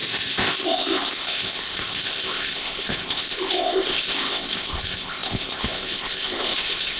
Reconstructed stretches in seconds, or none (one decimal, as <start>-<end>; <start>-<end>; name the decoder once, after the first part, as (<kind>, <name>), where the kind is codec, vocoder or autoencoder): 0.0-7.0 (codec, ZipCodec)